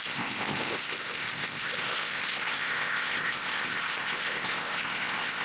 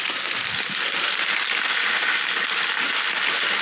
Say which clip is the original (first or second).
second